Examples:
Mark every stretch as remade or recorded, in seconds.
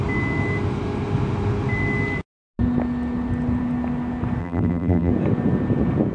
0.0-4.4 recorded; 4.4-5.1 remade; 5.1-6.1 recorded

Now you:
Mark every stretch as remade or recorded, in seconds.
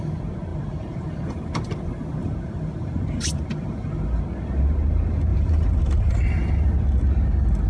0.0-0.5 recorded; 0.5-1.1 remade; 1.1-2.2 recorded; 2.2-4.2 remade; 4.2-5.3 recorded; 5.3-6.2 remade; 6.2-7.7 recorded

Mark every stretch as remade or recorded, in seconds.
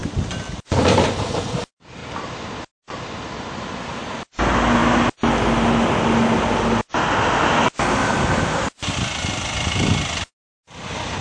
0.0-0.6 remade; 0.6-2.0 recorded; 2.0-3.2 remade; 3.2-11.2 recorded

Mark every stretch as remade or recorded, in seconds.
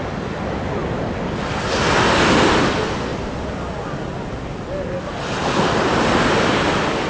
0.0-5.4 recorded; 5.4-6.2 remade; 6.2-7.1 recorded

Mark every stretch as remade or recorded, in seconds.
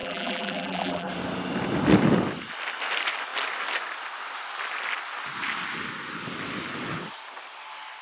0.0-1.1 remade; 1.1-8.0 recorded